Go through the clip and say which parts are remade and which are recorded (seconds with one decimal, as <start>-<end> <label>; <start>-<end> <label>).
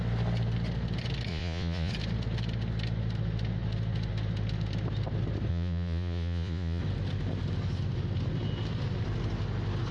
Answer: 0.0-1.3 recorded; 1.3-1.9 remade; 1.9-5.5 recorded; 5.5-6.8 remade; 6.8-9.9 recorded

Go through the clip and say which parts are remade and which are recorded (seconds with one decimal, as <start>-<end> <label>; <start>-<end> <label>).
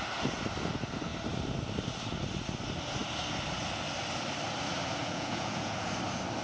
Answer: 0.0-5.0 recorded; 5.0-5.9 remade; 5.9-6.4 recorded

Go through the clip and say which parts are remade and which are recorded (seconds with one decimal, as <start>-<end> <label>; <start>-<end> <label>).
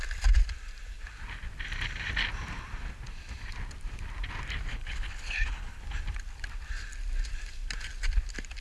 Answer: 0.0-4.7 recorded; 4.7-5.8 remade; 5.8-8.6 recorded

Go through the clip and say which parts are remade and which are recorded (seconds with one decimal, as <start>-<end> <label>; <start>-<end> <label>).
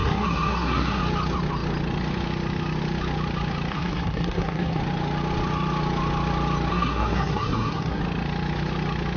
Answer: 0.0-1.0 remade; 1.0-3.7 recorded; 3.7-4.8 remade; 4.8-6.7 recorded; 6.7-8.0 remade; 8.0-9.2 recorded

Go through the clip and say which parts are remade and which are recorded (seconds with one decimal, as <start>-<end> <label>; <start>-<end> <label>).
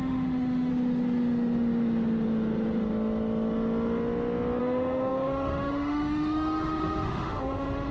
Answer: 0.0-0.7 remade; 0.7-4.6 recorded; 4.6-7.9 remade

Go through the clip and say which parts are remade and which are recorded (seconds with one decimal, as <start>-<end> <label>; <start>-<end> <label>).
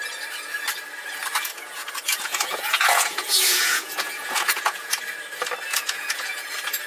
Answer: 0.0-1.3 recorded; 1.3-5.0 remade; 5.0-5.7 recorded; 5.7-6.5 remade; 6.5-6.9 recorded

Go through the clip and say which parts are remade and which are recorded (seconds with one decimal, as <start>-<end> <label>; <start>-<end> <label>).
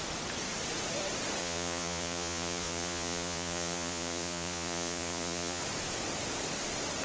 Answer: 0.0-1.4 recorded; 1.4-5.6 remade; 5.6-7.0 recorded